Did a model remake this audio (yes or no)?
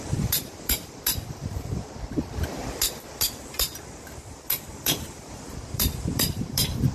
yes